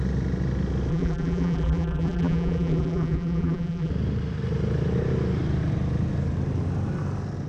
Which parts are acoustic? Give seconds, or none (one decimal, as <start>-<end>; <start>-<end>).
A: 0.0-0.9; 3.9-7.5